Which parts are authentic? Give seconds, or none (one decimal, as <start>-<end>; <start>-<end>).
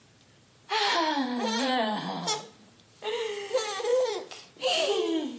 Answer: 3.2-3.9; 5.0-5.4